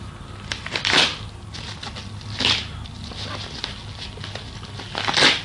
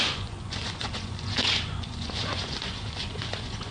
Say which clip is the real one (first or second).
first